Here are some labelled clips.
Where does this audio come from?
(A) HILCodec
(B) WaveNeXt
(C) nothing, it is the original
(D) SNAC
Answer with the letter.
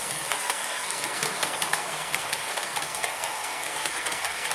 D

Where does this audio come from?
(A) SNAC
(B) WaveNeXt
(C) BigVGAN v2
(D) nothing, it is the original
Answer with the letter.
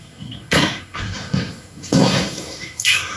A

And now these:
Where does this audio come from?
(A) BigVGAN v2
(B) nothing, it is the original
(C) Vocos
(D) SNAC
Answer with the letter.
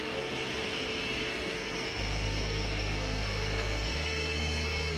D